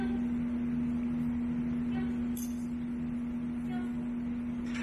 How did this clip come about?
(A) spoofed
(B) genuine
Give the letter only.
B